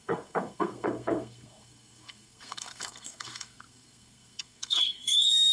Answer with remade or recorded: remade